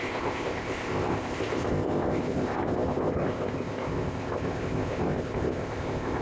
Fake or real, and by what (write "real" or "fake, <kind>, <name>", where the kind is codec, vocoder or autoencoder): fake, codec, ZipCodec